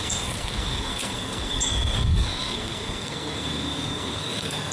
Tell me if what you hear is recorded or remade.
remade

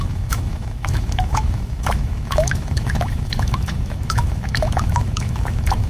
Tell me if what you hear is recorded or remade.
remade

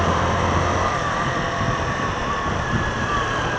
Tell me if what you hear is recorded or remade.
remade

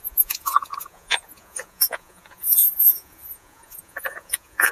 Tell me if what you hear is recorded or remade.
remade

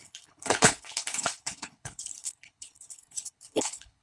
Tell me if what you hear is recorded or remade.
remade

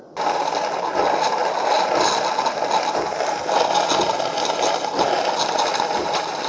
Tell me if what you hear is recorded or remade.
recorded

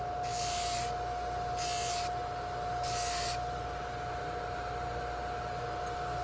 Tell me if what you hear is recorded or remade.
recorded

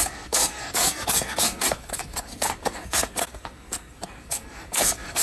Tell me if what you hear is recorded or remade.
remade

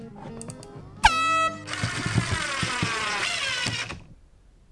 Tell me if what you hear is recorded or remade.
recorded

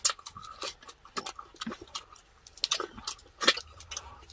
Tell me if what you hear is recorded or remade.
recorded